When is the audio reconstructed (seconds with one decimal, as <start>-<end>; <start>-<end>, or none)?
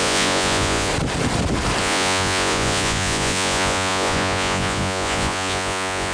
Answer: 0.0-0.9; 1.8-6.1